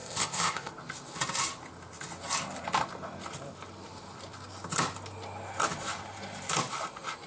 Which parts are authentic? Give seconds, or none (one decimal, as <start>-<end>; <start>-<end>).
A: 0.7-7.3